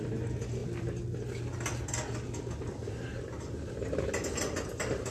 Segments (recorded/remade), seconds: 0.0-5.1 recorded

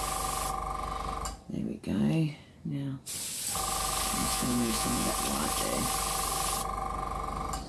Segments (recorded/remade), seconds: 0.0-4.2 recorded; 4.2-5.1 remade; 5.1-7.7 recorded

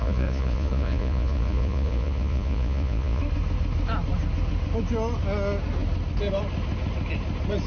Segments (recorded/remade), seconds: 0.0-3.2 remade; 3.2-7.7 recorded

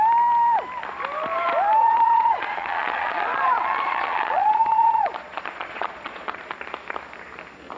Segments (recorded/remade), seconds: 0.0-1.8 recorded; 1.8-6.4 remade; 6.4-7.8 recorded

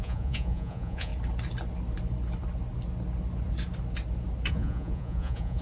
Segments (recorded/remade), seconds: 0.0-1.1 remade; 1.1-4.5 recorded; 4.5-5.6 remade

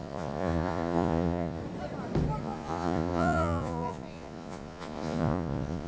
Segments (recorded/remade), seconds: 0.0-1.6 remade; 1.6-2.4 recorded; 2.4-5.9 remade

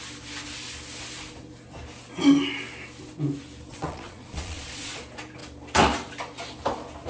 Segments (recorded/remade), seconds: 0.0-3.7 recorded; 3.7-5.0 remade; 5.0-7.1 recorded

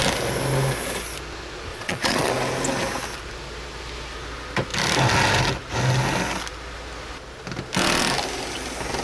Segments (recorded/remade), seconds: 0.0-1.7 recorded; 1.7-2.3 remade; 2.3-9.0 recorded